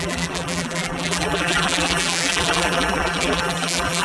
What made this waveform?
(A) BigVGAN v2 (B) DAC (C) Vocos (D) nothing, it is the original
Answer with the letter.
A